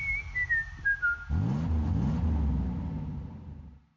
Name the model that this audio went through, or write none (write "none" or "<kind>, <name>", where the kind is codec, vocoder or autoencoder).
none